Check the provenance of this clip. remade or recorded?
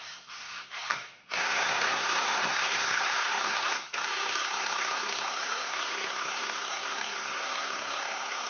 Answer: remade